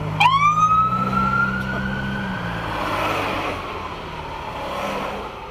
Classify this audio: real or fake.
real